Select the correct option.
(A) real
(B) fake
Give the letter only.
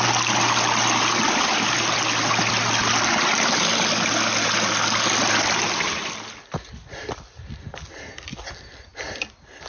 A